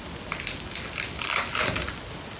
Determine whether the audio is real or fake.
real